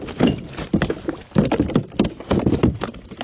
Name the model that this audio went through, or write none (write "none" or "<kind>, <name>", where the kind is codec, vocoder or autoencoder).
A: none